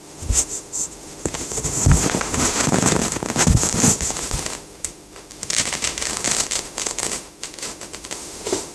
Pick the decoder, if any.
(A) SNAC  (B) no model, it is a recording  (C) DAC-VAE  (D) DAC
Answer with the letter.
C